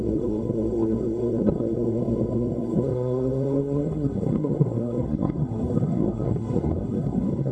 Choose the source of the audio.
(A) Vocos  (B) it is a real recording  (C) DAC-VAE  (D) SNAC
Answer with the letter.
D